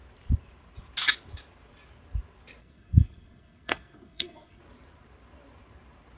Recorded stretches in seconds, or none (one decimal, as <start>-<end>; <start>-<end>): 0.0-2.6; 4.6-6.2